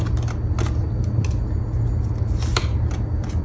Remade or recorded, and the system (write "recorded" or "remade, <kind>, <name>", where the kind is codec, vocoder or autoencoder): recorded